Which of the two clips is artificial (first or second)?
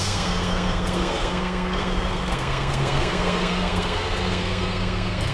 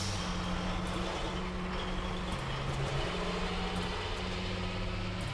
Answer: first